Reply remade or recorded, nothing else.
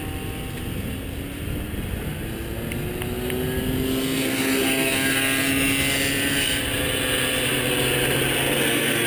recorded